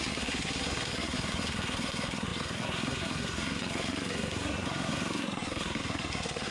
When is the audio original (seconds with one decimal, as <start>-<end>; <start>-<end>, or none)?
none